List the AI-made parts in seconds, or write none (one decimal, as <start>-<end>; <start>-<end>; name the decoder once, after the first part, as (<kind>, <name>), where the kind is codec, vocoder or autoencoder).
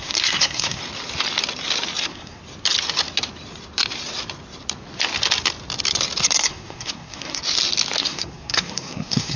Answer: 0.0-0.8 (codec, SNAC); 2.0-2.4; 6.5-7.4; 8.0-9.4